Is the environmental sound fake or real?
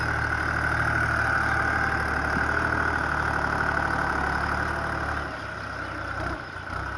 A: real